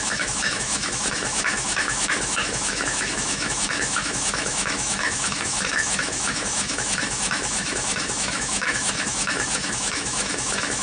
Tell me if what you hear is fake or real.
fake